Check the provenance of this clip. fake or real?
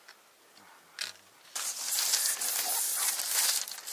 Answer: real